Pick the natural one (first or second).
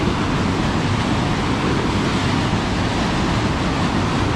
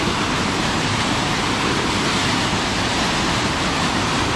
first